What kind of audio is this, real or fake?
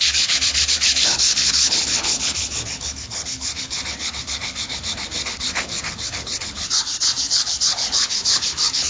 fake